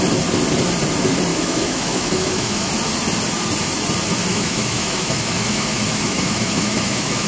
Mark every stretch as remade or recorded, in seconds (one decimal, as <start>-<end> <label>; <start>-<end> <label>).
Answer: 0.0-1.3 recorded; 1.3-2.7 remade; 2.7-4.3 recorded; 4.3-7.3 remade